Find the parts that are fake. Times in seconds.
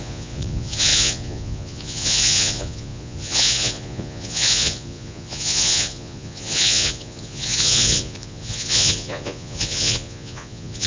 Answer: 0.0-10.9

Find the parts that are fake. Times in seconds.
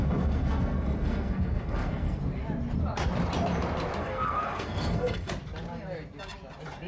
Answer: 0.0-2.2; 4.0-5.3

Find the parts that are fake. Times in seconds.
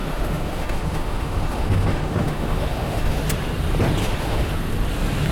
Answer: 0.0-3.2; 4.0-4.5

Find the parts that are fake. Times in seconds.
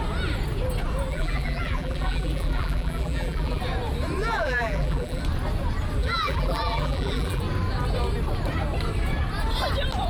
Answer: 1.1-3.6; 4.2-5.2; 6.0-7.4